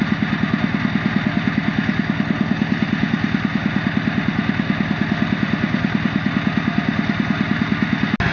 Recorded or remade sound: recorded